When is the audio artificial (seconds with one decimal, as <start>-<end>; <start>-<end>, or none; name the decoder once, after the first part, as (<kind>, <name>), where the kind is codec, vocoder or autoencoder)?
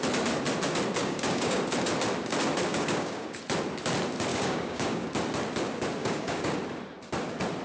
1.0-1.6 (codec, DAC); 2.7-3.4; 4.3-5.1; 6.0-6.6